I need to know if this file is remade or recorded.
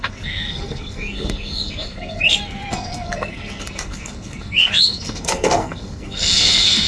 remade